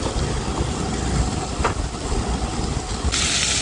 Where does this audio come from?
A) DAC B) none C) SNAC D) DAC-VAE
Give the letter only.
B